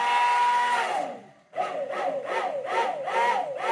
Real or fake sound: real